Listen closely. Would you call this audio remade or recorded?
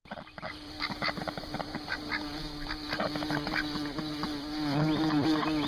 recorded